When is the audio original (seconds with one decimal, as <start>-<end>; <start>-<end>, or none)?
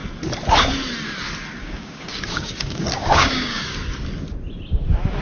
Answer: 0.0-1.6; 3.6-5.2